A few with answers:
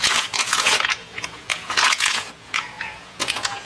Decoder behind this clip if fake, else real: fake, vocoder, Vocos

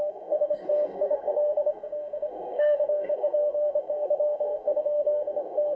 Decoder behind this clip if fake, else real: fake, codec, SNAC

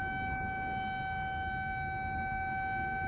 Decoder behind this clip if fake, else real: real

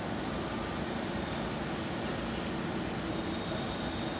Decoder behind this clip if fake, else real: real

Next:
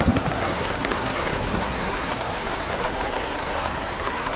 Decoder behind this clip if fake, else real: fake, codec, SNAC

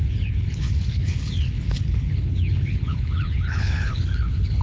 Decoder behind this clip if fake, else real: fake, codec, HILCodec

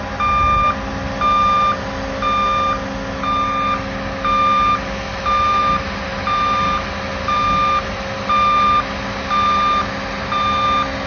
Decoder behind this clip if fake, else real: real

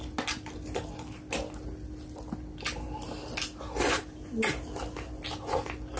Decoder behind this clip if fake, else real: real